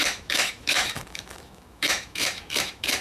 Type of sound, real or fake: fake